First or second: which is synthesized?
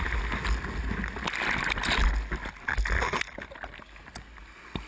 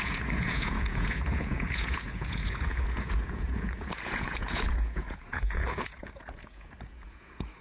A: second